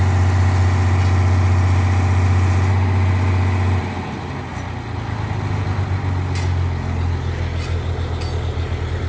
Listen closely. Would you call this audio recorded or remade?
recorded